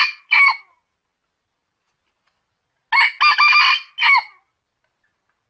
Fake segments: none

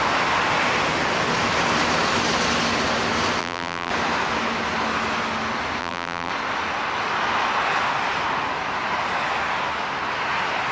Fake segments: 3.4-3.9 (vocoder, BigVGAN v2); 5.8-6.3

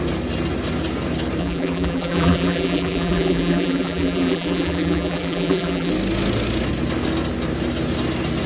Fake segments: 1.4-5.9 (vocoder, BigVGAN v2)

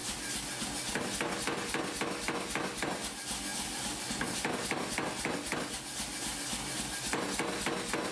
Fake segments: 0.0-0.9 (vocoder, BigVGAN v2); 3.5-4.1

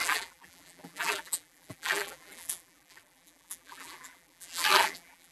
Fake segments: 0.0-5.3 (vocoder, BigVGAN v2)

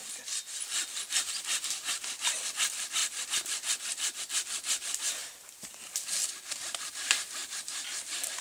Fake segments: 3.0-4.2 (vocoder, BigVGAN v2); 5.2-5.8; 7.4-8.4

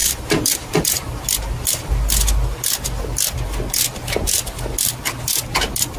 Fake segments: 0.0-1.9 (vocoder, BigVGAN v2)

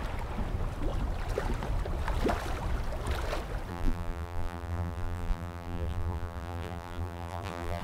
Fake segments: 3.7-7.8 (vocoder, BigVGAN v2)